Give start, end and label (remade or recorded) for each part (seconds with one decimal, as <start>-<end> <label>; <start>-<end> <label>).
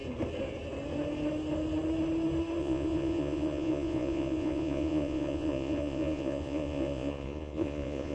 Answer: 0.0-2.6 recorded; 2.6-8.1 remade